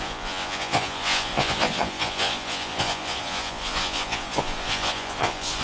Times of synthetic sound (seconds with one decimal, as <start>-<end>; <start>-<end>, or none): 0.0-5.6